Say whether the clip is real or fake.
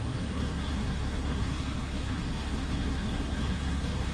fake